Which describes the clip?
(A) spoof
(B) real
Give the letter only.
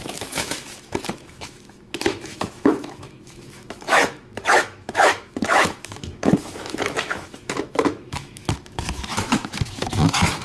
A